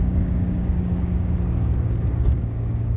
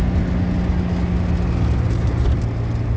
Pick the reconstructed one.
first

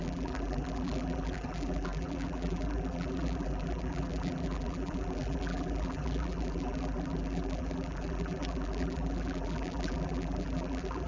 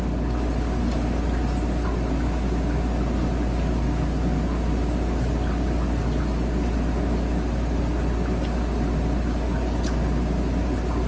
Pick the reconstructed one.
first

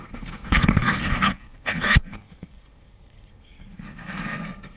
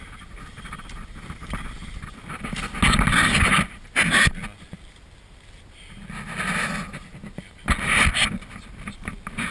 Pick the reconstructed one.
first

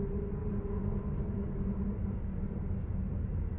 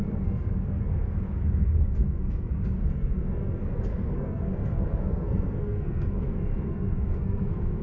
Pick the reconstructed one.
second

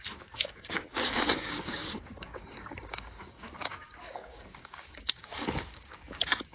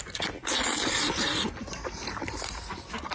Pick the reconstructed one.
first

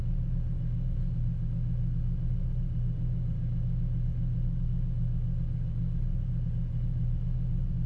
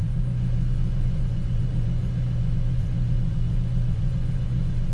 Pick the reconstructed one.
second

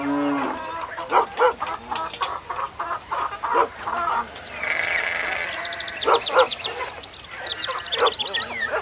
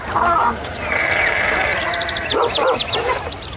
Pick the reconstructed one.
second